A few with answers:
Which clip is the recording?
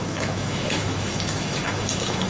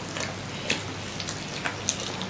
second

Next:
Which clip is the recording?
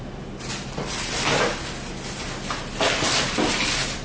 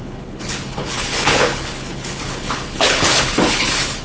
first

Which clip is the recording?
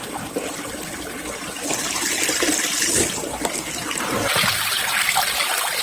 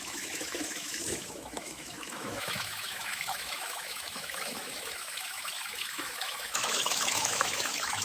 first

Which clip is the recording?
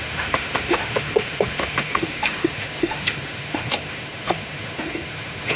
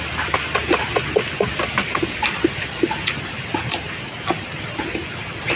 second